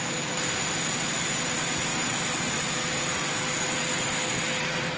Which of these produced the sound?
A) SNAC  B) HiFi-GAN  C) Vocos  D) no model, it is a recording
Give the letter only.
D